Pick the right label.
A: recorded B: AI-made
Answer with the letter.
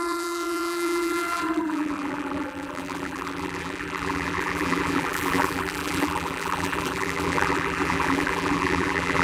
B